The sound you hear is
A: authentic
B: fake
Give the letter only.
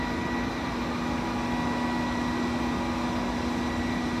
A